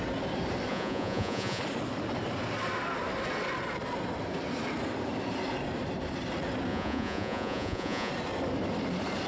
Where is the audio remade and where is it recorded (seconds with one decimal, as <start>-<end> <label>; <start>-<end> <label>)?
0.0-0.7 recorded; 0.7-1.6 remade; 1.6-6.7 recorded; 6.7-8.1 remade; 8.1-9.3 recorded